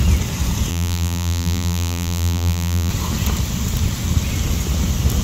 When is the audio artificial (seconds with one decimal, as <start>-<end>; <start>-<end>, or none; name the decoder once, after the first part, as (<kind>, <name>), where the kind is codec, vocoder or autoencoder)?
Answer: 0.7-2.9 (vocoder, BigVGAN v2)

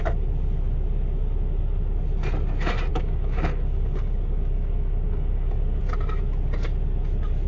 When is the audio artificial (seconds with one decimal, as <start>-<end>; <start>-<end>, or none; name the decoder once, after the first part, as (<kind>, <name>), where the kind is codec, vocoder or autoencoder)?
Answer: 2.9-5.8 (codec, DAC)

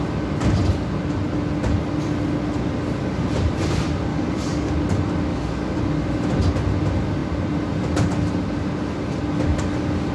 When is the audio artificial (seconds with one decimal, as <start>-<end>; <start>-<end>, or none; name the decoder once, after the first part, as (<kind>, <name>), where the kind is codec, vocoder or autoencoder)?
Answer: 4.1-4.7 (codec, DAC); 5.3-5.8

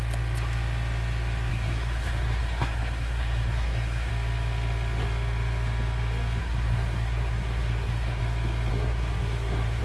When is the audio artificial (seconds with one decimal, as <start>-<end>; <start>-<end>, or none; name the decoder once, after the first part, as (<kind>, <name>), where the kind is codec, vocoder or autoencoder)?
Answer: 1.5-4.1 (codec, SNAC); 6.4-8.2; 8.7-9.8